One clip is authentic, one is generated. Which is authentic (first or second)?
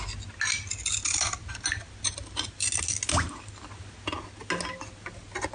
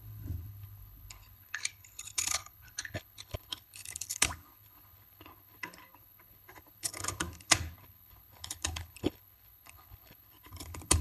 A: first